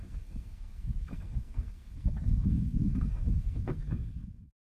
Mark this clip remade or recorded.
remade